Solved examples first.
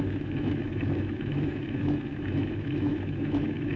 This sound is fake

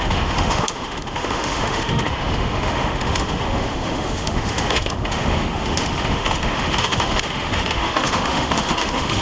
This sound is fake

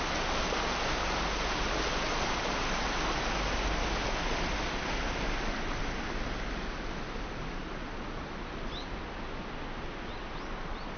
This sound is real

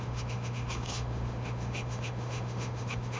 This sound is fake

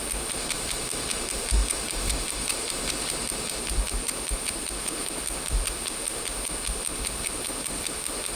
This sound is fake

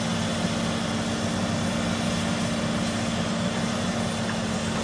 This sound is real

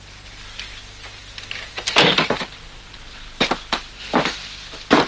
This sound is real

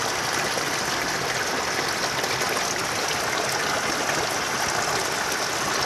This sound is real